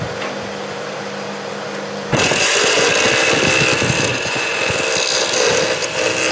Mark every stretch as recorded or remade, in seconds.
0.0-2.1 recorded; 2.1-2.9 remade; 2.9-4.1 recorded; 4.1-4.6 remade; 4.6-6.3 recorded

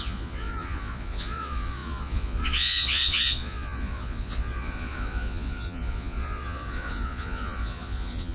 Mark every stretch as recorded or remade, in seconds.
0.0-8.3 remade

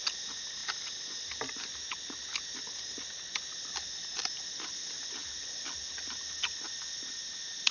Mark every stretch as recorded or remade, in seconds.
0.0-7.7 recorded

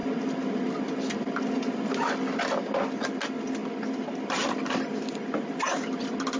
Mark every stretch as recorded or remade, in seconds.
0.0-6.4 recorded

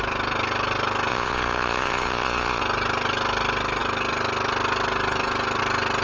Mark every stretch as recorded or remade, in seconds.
0.0-1.1 recorded; 1.1-2.6 remade; 2.6-6.0 recorded

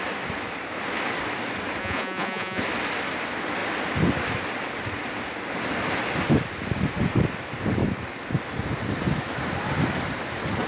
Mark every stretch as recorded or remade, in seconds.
0.0-1.8 recorded; 1.8-2.6 remade; 2.6-10.7 recorded

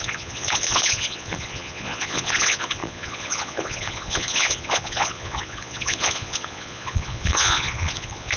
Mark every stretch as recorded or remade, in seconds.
0.0-8.4 remade

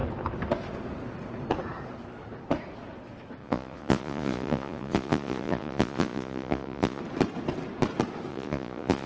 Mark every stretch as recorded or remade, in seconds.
0.0-3.4 recorded; 3.4-7.0 remade; 7.0-8.3 recorded; 8.3-9.1 remade